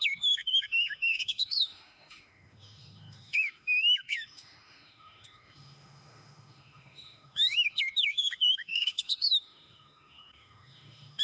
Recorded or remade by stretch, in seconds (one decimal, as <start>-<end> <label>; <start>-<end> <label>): 0.0-11.2 remade